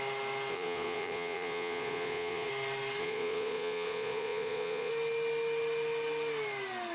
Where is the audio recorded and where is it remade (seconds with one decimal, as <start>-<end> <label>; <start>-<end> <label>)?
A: 0.0-0.5 recorded; 0.5-2.5 remade; 2.5-3.0 recorded; 3.0-4.9 remade; 4.9-6.9 recorded